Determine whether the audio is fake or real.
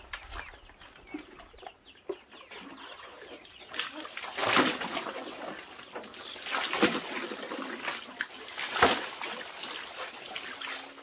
real